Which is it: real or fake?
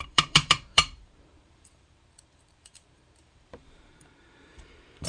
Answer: fake